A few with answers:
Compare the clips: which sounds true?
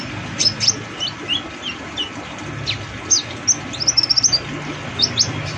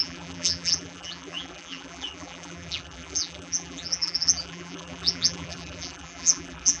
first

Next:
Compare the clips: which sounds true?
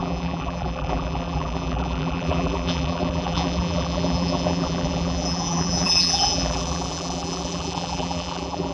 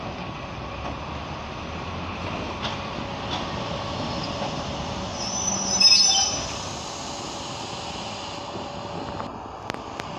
second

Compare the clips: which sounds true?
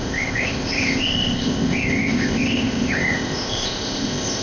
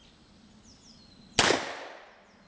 second